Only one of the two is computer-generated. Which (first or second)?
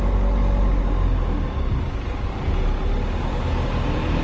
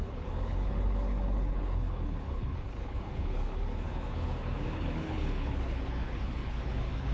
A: second